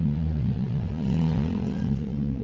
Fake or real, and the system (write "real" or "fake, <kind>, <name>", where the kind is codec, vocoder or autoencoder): fake, vocoder, WaveNeXt